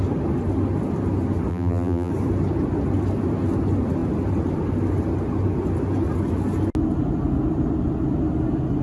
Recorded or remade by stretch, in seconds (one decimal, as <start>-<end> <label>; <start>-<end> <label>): 0.0-1.5 recorded; 1.5-2.1 remade; 2.1-8.8 recorded